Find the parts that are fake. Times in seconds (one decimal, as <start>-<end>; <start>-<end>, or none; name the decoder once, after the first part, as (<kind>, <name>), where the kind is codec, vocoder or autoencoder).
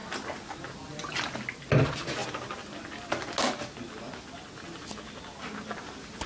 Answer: none